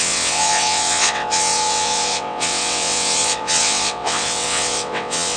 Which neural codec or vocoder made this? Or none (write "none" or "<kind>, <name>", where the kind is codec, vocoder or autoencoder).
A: vocoder, WaveNeXt